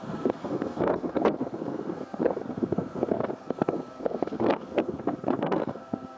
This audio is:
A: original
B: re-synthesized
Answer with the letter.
B